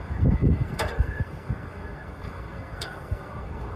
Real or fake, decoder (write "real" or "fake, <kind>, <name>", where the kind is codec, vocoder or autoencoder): fake, codec, SNAC